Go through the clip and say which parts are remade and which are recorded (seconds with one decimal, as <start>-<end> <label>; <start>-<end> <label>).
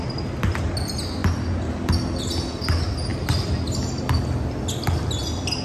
0.0-5.6 recorded